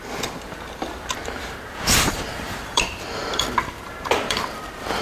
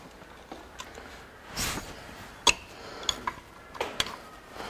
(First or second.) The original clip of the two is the second